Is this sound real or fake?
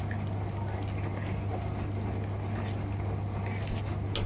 real